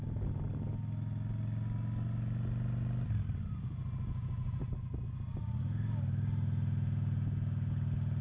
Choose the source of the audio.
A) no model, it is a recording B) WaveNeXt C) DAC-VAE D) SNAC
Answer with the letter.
A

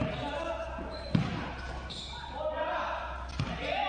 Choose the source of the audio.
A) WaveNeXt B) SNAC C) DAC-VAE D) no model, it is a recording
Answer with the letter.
D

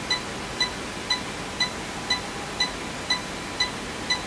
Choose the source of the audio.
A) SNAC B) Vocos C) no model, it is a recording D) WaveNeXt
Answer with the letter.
C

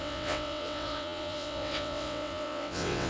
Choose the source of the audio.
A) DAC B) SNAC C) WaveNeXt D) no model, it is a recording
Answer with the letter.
C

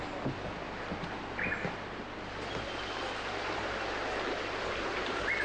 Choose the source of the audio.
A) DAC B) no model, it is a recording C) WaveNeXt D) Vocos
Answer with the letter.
B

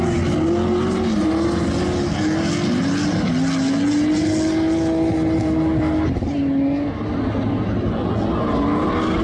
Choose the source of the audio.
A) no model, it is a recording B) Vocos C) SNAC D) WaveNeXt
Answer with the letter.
A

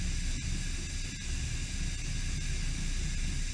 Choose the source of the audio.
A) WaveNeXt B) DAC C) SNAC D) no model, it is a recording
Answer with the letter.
D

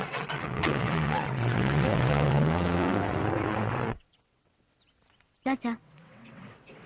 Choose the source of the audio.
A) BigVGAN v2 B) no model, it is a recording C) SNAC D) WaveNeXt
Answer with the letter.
D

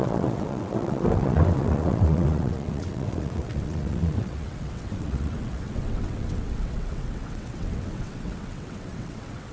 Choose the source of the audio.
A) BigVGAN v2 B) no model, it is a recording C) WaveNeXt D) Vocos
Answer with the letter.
C